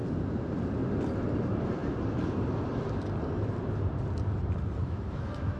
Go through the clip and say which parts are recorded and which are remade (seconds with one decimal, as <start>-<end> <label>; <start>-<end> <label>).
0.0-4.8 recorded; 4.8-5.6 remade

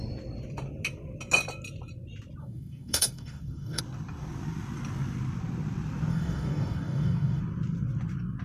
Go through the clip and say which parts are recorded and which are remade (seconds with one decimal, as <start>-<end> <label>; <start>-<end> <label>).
0.0-2.4 recorded; 2.4-3.8 remade; 3.8-6.1 recorded; 6.1-7.4 remade; 7.4-8.4 recorded

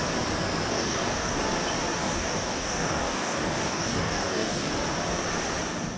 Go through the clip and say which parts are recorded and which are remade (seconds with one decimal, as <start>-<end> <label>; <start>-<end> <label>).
0.0-0.7 recorded; 0.7-1.4 remade; 1.4-2.0 recorded; 2.0-4.7 remade; 4.7-6.0 recorded

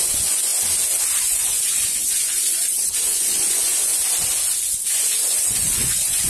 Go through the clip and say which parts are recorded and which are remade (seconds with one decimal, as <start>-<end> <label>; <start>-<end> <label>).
0.0-0.5 remade; 0.5-1.2 recorded; 1.2-3.9 remade; 3.9-4.9 recorded; 4.9-6.3 remade